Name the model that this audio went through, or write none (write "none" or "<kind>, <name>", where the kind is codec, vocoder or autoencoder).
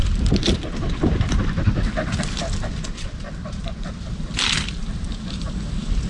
vocoder, BigVGAN v2